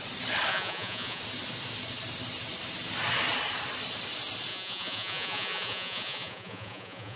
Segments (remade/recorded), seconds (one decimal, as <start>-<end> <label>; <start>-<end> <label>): 0.0-0.5 recorded; 0.5-1.2 remade; 1.2-4.5 recorded; 4.5-7.2 remade